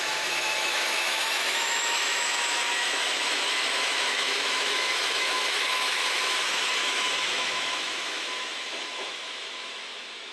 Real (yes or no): no